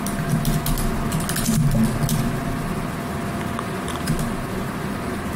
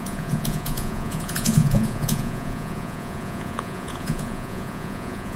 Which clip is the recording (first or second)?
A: first